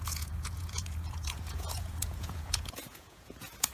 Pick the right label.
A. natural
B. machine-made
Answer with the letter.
B